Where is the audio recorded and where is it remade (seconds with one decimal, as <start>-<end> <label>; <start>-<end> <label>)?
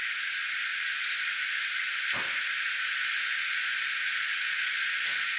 0.0-0.7 remade; 0.7-3.9 recorded; 3.9-5.4 remade